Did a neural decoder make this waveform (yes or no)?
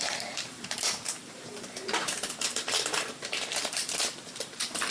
yes